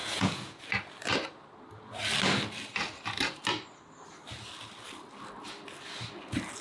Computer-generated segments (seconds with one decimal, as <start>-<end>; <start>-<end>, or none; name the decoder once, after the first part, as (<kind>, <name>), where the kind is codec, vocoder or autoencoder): 0.0-0.6 (vocoder, Vocos)